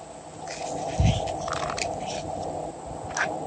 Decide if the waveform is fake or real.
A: real